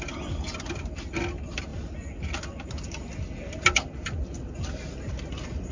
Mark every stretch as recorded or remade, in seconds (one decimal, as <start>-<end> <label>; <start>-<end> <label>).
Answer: 0.0-5.7 recorded